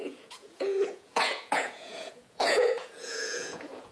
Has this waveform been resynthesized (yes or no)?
yes